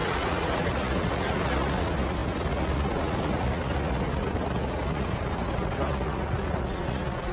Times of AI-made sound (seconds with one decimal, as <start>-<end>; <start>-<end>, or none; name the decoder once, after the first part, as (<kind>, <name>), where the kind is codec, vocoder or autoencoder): 0.0-7.3 (vocoder, Vocos)